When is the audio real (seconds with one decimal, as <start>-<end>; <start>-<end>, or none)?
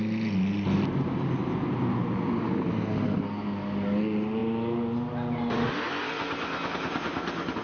0.0-7.6